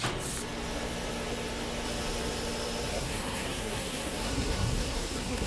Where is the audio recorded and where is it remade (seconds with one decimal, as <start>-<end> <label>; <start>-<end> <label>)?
0.0-2.9 recorded; 2.9-5.5 remade

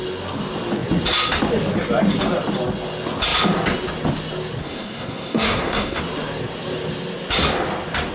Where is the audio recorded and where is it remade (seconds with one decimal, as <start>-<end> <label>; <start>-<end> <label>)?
0.0-4.6 recorded; 4.6-6.0 remade; 6.0-8.1 recorded